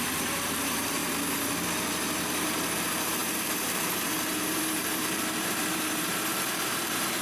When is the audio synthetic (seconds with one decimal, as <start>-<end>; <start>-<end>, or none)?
0.0-1.0; 2.4-7.2